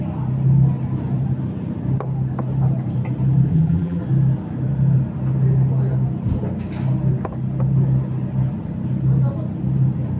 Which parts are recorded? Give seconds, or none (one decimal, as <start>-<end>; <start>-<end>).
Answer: 0.0-3.5; 4.0-10.2